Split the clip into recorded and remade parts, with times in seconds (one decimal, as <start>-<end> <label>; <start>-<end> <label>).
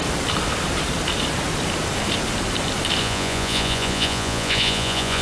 0.0-3.0 recorded; 3.0-5.2 remade